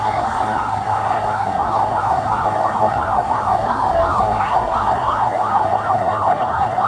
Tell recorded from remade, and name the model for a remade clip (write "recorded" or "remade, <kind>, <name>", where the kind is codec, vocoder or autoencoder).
remade, codec, SNAC